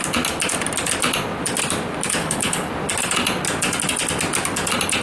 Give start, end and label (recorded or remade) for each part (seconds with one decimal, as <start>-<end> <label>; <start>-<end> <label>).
0.0-2.2 recorded; 2.2-2.7 remade; 2.7-5.0 recorded